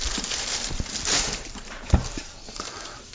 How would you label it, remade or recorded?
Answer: remade